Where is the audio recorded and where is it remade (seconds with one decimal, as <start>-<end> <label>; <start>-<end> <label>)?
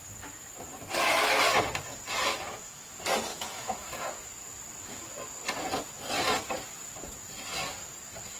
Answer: 0.0-2.3 recorded; 2.3-2.9 remade; 2.9-3.3 recorded; 3.3-3.9 remade; 3.9-8.4 recorded